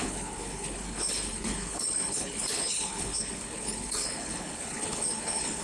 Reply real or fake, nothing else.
fake